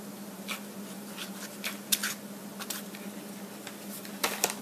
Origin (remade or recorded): recorded